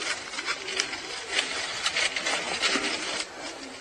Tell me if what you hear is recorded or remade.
remade